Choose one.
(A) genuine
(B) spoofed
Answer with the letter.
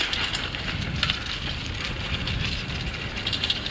A